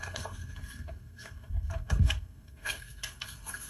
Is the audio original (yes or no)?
no